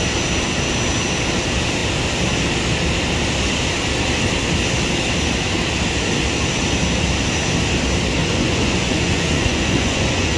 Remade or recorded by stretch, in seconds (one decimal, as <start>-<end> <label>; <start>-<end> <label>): 0.0-8.2 recorded; 8.2-10.4 remade